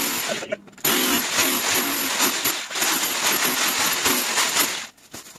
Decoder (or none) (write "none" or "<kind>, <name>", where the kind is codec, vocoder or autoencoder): none